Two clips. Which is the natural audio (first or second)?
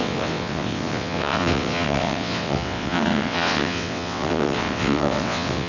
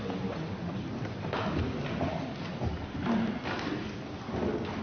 second